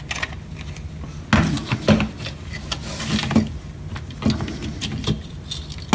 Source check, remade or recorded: recorded